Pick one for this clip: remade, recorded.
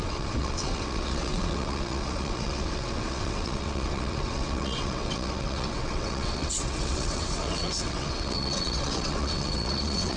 remade